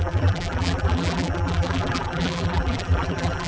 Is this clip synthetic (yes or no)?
yes